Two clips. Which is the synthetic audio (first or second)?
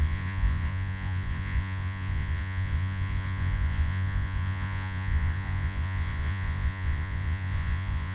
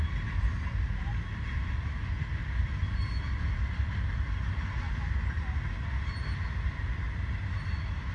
first